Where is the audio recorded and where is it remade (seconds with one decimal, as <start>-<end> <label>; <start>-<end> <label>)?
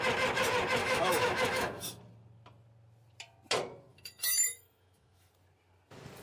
0.0-0.8 recorded; 0.8-2.0 remade; 2.0-3.9 recorded; 3.9-5.3 remade; 5.3-6.2 recorded